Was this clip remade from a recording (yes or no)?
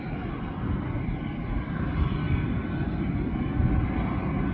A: no